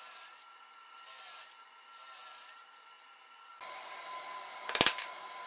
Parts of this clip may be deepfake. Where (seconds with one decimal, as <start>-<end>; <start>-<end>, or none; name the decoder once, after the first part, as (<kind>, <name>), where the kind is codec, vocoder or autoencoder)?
0.8-1.4 (vocoder, BigVGAN v2); 2.2-4.5